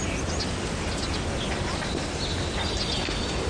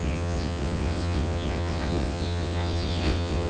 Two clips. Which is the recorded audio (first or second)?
first